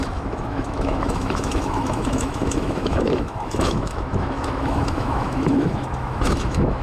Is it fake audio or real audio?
fake